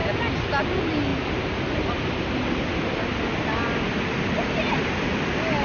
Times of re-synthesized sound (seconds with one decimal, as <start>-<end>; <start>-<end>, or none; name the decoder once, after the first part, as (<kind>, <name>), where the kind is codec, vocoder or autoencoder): none